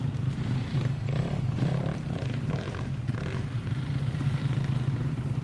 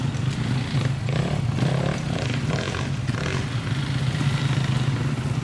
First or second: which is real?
second